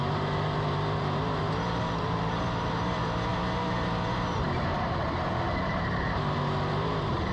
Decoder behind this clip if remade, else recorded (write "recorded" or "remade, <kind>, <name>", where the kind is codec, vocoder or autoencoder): remade, vocoder, BigVGAN v2